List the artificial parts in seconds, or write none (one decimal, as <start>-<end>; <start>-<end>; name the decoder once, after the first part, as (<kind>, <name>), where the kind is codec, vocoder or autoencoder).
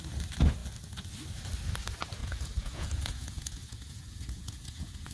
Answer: 2.2-5.1 (vocoder, Vocos)